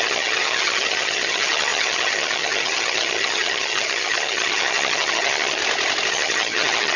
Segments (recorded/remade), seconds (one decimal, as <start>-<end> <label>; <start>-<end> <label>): 0.0-5.6 remade; 5.6-6.1 recorded; 6.1-7.0 remade